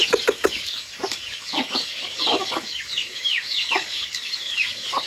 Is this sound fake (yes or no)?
yes